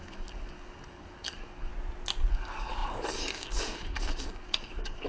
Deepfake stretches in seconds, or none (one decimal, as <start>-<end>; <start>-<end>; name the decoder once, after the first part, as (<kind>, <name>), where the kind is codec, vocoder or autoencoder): 0.0-1.7 (codec, DAC); 2.3-5.1